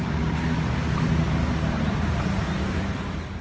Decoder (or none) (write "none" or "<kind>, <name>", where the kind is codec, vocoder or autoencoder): none